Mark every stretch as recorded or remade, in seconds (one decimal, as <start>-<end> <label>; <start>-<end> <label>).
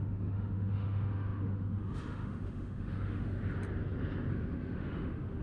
0.0-3.4 remade; 3.4-4.3 recorded; 4.3-5.4 remade